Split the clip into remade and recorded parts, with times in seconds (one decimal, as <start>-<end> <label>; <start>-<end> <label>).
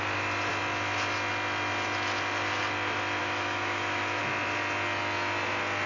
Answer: 0.0-3.2 recorded; 3.2-4.2 remade; 4.2-5.9 recorded